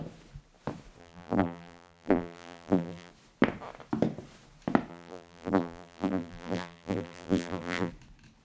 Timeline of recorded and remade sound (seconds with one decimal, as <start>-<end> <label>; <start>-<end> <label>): 0.0-1.0 recorded; 1.0-3.1 remade; 3.1-4.9 recorded; 4.9-7.9 remade; 7.9-8.4 recorded